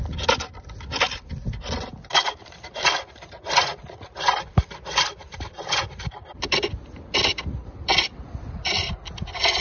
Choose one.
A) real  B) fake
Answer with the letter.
A